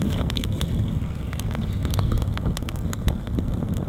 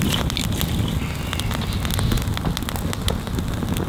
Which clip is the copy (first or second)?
first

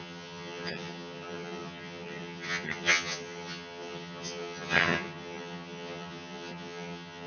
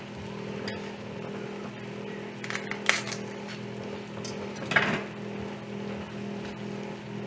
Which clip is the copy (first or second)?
first